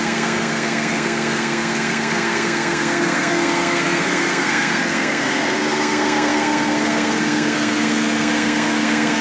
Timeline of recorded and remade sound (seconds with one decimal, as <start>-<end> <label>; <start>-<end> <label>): 0.0-9.2 remade